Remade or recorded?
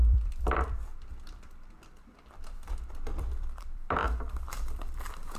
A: remade